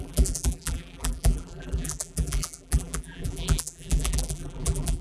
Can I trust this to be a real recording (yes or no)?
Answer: no